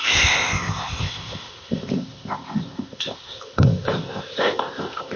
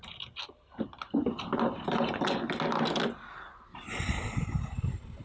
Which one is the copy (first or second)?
first